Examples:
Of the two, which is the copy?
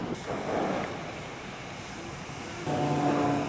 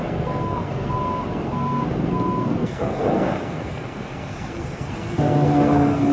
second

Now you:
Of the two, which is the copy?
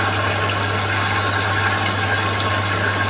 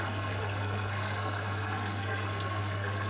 second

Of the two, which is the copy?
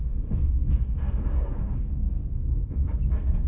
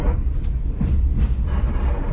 first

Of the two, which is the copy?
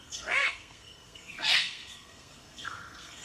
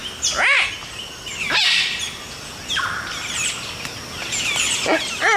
first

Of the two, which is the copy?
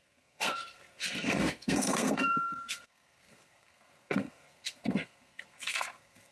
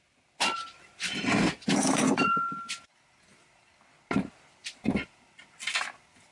first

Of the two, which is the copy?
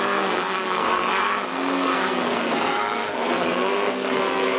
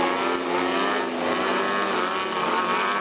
first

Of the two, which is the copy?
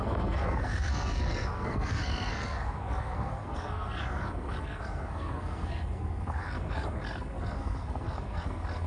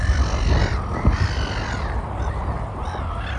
first